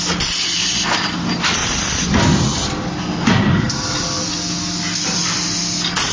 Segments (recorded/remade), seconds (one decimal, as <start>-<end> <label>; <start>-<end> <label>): 0.0-6.1 recorded